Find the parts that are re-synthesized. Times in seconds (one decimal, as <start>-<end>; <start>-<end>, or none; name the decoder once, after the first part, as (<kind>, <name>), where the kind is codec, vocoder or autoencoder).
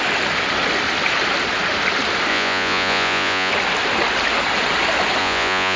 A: 2.3-3.5 (vocoder, Vocos); 5.2-5.8